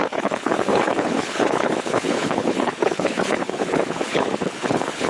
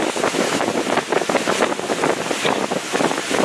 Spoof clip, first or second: first